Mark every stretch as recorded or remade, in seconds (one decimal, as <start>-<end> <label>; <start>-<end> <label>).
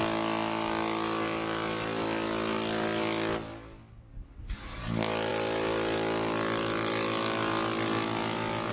0.0-8.7 recorded